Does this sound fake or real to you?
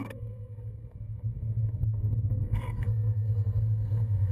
fake